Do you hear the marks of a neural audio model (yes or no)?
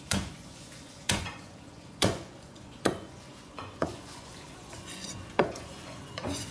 yes